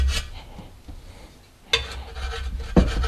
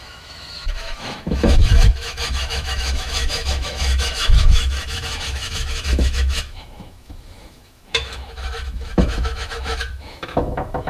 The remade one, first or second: second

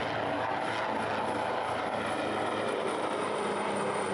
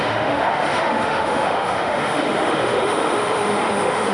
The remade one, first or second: second